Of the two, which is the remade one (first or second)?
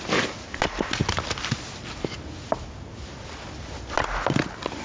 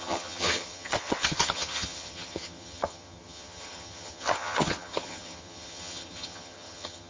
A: second